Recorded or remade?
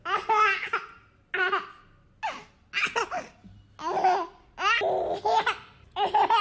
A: recorded